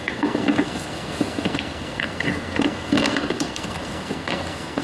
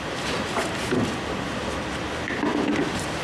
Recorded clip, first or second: second